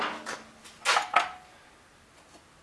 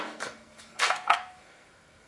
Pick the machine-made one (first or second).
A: second